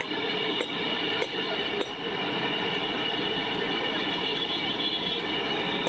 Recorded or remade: recorded